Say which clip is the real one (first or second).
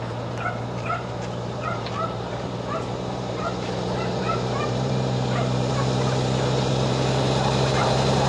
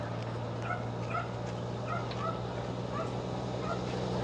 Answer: second